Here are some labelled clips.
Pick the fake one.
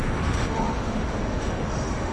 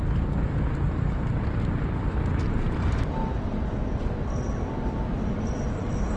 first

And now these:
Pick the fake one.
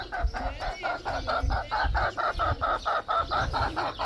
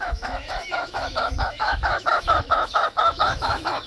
second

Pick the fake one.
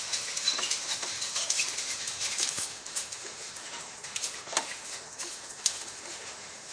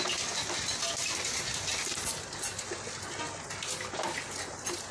first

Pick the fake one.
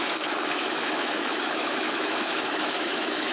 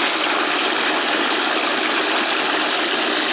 first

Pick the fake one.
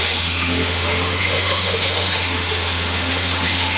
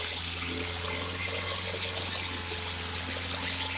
first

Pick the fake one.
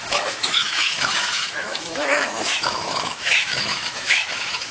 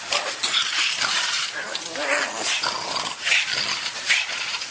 first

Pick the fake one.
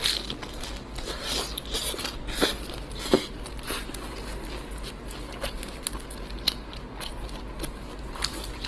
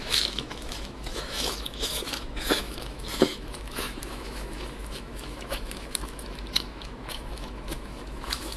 second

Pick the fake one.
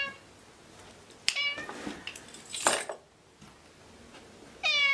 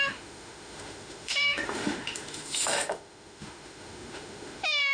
second